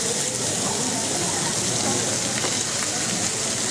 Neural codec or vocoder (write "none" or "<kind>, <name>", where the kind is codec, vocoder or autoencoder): none